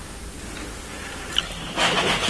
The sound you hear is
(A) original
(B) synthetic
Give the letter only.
A